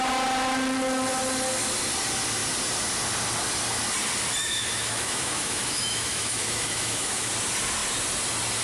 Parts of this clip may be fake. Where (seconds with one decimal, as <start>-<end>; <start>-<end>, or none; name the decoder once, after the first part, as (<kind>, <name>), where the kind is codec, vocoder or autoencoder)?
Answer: 4.4-7.3 (autoencoder, DAC-VAE)